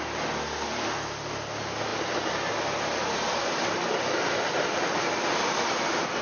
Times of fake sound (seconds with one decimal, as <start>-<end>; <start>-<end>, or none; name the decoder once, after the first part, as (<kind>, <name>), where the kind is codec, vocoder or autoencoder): none